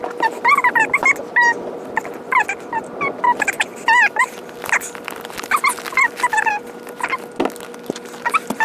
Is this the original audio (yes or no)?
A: yes